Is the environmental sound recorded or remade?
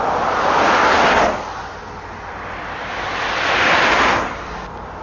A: recorded